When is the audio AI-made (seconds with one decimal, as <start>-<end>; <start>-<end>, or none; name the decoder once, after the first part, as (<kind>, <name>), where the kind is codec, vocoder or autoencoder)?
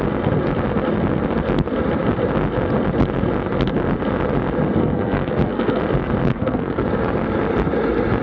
4.8-5.8 (codec, SNAC); 6.3-6.8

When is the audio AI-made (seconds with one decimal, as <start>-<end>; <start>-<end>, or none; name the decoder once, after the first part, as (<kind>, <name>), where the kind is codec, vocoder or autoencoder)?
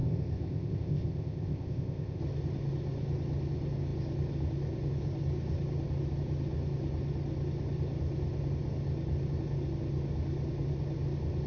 0.0-2.2 (codec, ZipCodec)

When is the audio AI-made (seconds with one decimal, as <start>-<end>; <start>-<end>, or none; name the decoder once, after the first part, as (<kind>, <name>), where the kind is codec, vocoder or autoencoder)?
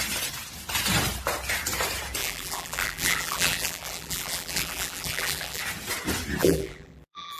2.2-5.6 (vocoder, BigVGAN v2); 6.4-7.4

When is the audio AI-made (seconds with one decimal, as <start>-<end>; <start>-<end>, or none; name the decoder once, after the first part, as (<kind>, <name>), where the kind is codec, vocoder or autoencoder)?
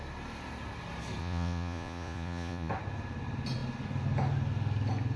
1.2-2.7 (vocoder, Vocos)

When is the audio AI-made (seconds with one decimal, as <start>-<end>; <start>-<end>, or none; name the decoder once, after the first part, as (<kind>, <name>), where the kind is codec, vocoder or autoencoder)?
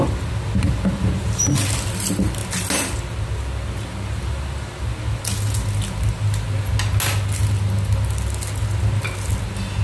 none